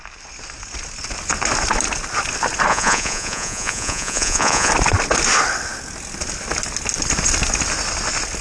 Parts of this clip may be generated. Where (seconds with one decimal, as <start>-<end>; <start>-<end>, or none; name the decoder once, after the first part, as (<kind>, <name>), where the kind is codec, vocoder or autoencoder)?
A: 2.7-4.7 (vocoder, Vocos)